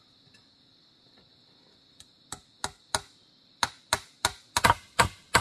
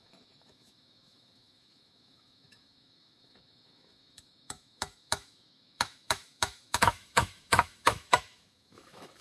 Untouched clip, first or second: first